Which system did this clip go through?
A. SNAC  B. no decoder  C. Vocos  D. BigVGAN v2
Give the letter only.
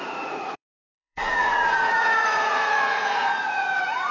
C